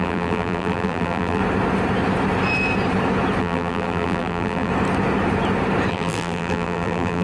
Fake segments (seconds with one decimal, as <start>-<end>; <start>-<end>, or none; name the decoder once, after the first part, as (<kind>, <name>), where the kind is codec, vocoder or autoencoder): 0.0-1.4 (vocoder, BigVGAN v2); 3.4-4.7; 5.9-7.2